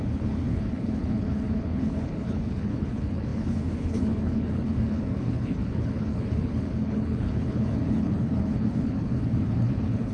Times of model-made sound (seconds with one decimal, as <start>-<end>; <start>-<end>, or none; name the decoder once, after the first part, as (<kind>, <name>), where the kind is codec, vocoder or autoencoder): 0.0-10.1 (codec, HILCodec)